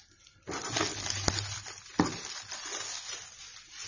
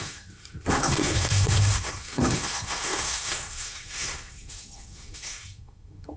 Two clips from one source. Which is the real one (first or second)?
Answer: first